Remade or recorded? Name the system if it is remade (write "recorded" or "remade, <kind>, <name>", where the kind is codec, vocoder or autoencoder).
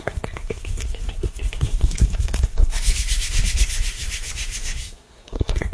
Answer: remade, codec, SNAC